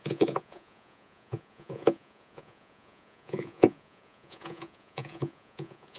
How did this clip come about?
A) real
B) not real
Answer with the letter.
B